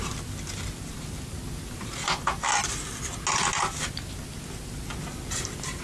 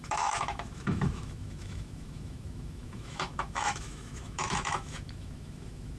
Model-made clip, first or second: second